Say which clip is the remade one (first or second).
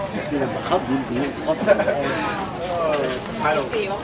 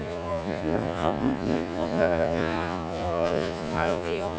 second